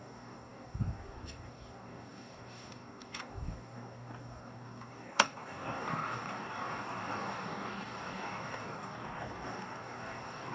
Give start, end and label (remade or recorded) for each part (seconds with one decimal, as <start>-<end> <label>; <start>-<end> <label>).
0.0-10.5 remade